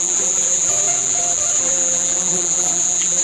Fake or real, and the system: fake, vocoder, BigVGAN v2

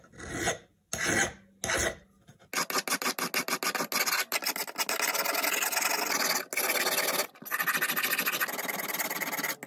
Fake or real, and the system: real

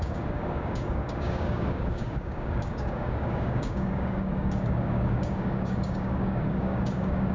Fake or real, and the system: fake, codec, DAC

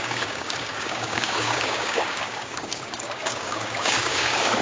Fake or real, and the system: fake, codec, DAC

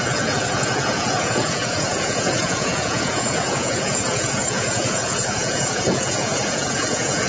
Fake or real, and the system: fake, vocoder, Vocos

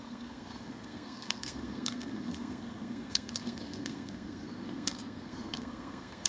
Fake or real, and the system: fake, codec, SNAC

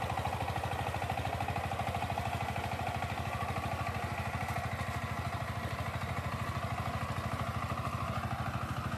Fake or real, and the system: real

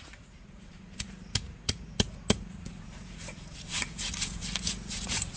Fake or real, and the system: fake, vocoder, Vocos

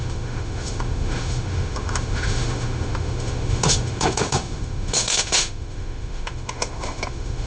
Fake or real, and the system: fake, autoencoder, DAC-VAE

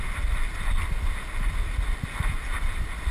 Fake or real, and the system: real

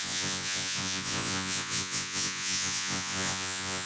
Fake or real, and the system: fake, vocoder, Vocos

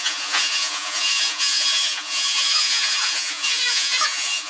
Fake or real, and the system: fake, vocoder, Vocos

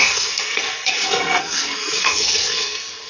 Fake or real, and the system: fake, codec, SNAC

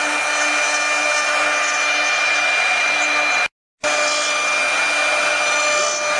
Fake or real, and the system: real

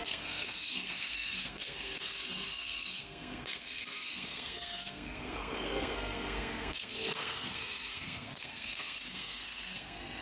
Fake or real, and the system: fake, codec, SNAC